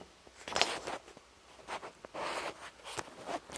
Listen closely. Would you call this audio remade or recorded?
recorded